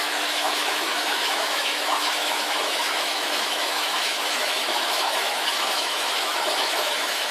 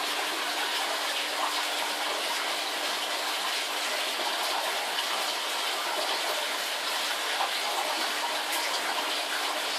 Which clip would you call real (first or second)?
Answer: second